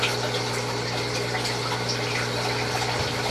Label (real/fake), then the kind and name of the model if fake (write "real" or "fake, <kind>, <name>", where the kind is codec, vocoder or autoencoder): real